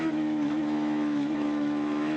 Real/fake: fake